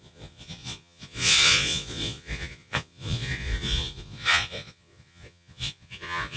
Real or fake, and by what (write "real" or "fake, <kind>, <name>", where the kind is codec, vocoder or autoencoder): fake, vocoder, Vocos